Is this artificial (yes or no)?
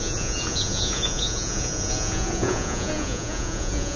yes